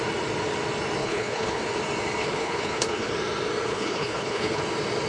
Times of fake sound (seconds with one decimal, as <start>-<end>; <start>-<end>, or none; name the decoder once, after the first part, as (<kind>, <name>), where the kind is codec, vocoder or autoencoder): 1.0-1.6 (codec, HILCodec); 2.2-3.1; 3.7-4.6